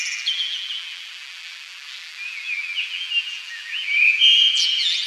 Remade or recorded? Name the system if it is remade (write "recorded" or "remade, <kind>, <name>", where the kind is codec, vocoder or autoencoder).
remade, vocoder, BigVGAN v2